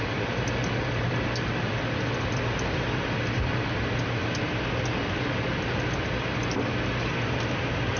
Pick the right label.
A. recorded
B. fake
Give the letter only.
A